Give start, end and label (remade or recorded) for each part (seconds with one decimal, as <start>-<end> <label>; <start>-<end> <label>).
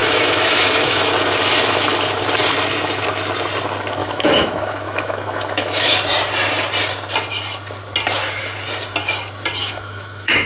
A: 0.0-1.1 remade; 1.1-4.0 recorded; 4.0-5.9 remade; 5.9-9.6 recorded; 9.6-10.5 remade